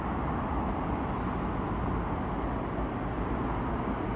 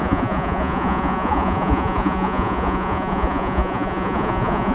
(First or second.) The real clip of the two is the first